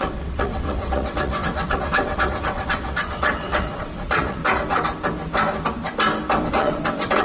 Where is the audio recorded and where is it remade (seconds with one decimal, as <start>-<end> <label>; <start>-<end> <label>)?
0.0-4.4 remade; 4.4-6.5 recorded; 6.5-7.2 remade